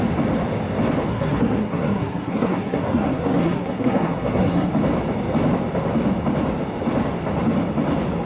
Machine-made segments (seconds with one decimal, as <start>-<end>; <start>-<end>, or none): 1.1-4.7